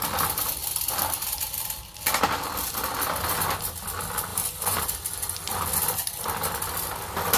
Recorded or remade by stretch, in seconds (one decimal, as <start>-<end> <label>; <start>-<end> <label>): 0.0-4.3 recorded; 4.3-4.8 remade; 4.8-7.4 recorded